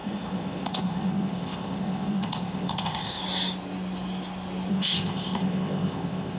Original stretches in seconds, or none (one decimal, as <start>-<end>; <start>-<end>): 3.2-4.7